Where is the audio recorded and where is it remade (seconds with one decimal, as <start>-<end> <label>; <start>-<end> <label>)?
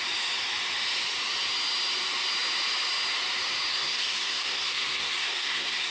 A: 0.0-3.7 recorded; 3.7-5.9 remade